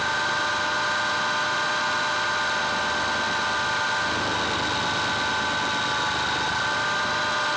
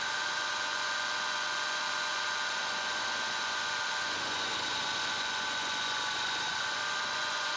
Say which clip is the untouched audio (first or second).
first